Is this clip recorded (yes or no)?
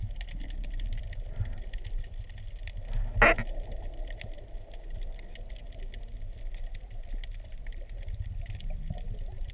yes